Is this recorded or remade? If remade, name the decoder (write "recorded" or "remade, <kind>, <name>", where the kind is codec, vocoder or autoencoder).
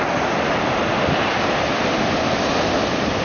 recorded